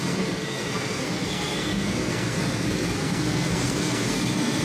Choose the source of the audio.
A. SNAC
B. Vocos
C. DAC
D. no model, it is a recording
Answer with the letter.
A